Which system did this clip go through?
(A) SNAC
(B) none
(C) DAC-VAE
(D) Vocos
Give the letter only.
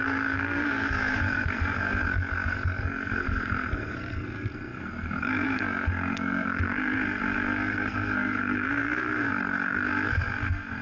A